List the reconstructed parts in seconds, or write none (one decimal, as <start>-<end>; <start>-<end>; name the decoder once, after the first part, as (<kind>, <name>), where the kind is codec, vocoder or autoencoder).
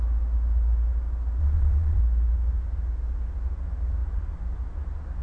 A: 1.4-2.0 (vocoder, WaveNeXt)